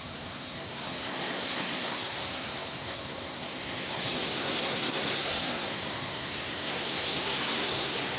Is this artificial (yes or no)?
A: yes